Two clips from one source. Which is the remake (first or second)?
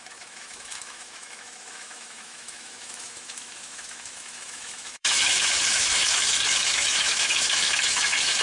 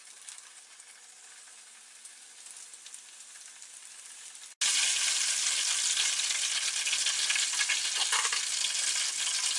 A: first